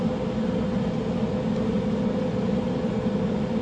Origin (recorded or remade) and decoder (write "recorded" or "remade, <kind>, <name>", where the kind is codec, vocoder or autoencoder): recorded